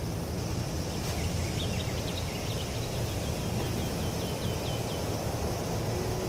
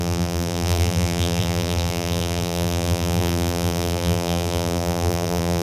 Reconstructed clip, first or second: second